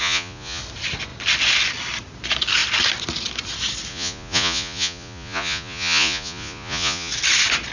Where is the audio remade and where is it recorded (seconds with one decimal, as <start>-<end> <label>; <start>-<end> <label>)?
0.0-0.6 remade; 0.6-3.9 recorded; 3.9-7.1 remade; 7.1-7.7 recorded